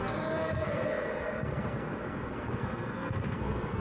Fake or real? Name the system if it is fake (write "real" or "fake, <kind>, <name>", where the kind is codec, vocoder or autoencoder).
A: fake, codec, SNAC